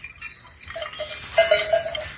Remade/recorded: recorded